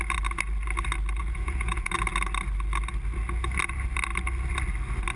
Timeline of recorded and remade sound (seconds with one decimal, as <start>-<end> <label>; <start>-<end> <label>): 0.0-1.2 recorded; 1.2-1.9 remade; 1.9-5.2 recorded